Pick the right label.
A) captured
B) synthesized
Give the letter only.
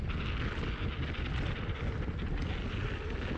A